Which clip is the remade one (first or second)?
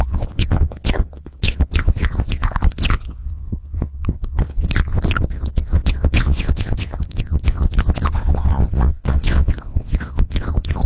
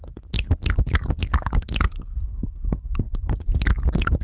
first